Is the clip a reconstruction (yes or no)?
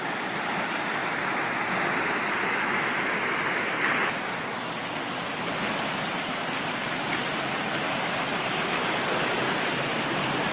no